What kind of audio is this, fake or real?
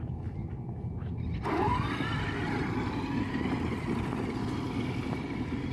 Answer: real